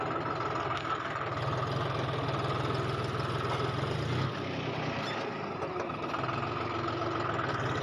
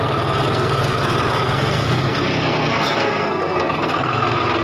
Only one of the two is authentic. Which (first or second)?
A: first